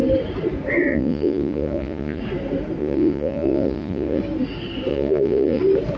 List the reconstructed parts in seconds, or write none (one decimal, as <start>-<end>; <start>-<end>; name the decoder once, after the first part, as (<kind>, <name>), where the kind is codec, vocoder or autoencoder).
0.9-2.2 (vocoder, Vocos); 2.8-4.2; 4.9-5.6